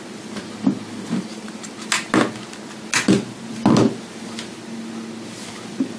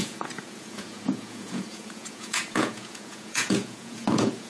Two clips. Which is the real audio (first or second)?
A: first